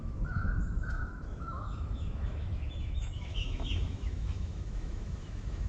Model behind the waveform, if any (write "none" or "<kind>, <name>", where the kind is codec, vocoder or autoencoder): autoencoder, DAC-VAE